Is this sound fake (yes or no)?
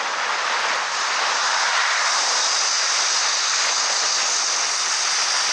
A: no